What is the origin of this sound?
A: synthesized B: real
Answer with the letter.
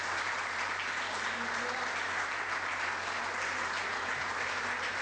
B